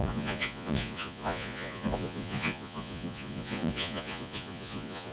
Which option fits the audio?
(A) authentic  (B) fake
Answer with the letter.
B